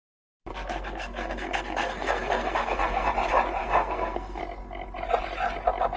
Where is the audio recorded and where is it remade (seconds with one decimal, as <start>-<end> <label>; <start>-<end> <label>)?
0.0-0.5 recorded; 0.5-3.1 remade; 3.1-3.6 recorded; 3.6-4.4 remade; 4.4-6.0 recorded